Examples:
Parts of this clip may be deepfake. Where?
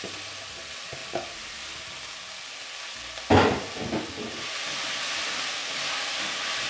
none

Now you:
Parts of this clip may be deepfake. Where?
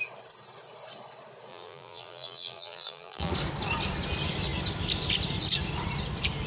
1.5-3.3 (vocoder, BigVGAN v2)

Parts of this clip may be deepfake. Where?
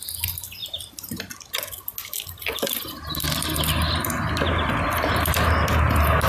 0.6-1.2 (vocoder, BigVGAN v2)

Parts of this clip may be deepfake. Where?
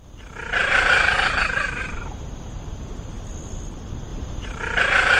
0.6-3.3 (vocoder, BigVGAN v2); 4.1-4.8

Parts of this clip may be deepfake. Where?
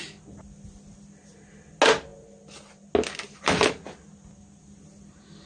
none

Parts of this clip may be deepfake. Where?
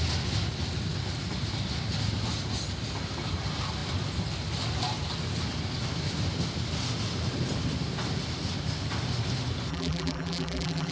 9.7-10.9 (vocoder, BigVGAN v2)